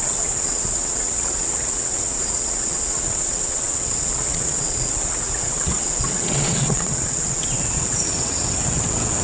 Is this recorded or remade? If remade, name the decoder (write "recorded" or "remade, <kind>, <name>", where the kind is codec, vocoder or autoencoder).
remade, vocoder, WaveNeXt